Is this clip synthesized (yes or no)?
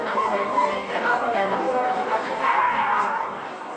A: yes